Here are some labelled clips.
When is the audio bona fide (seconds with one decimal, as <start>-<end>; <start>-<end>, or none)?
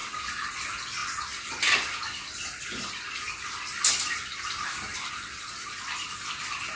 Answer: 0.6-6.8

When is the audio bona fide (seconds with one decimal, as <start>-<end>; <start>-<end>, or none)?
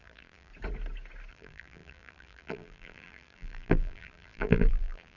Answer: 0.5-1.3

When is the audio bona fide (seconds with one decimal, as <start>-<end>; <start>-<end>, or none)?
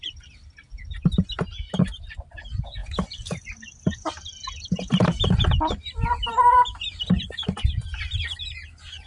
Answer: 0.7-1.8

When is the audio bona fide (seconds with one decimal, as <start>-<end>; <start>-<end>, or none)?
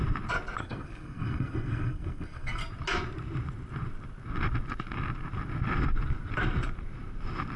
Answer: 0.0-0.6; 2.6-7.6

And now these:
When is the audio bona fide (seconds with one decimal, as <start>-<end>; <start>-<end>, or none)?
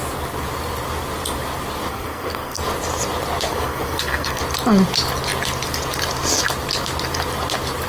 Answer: 0.0-1.9; 2.6-3.5; 4.4-7.9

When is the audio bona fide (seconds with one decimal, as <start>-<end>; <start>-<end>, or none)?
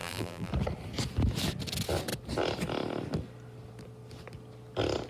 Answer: 0.5-5.1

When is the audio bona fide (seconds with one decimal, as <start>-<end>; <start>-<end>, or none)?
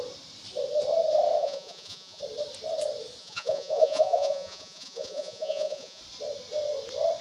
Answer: 0.0-1.4; 2.2-3.2; 6.0-7.2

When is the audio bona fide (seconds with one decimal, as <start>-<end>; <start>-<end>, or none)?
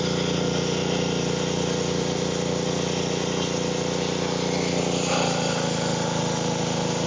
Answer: 0.0-7.1